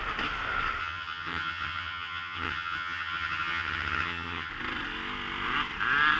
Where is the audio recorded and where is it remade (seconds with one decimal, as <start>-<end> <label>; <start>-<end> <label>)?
0.0-0.8 recorded; 0.8-4.5 remade; 4.5-6.2 recorded